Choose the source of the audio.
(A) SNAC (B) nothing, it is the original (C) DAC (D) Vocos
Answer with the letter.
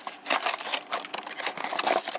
B